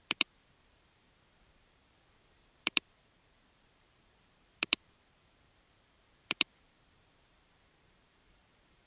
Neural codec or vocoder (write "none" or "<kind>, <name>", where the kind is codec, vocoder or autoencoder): vocoder, BigVGAN v2